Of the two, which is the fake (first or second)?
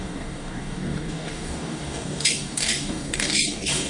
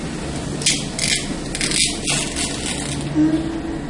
first